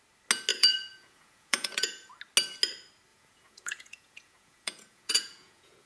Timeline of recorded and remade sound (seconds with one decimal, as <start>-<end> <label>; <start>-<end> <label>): 0.0-0.5 recorded; 0.5-2.1 remade; 2.1-3.1 recorded; 3.1-5.9 remade